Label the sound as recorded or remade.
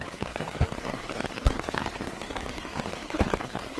remade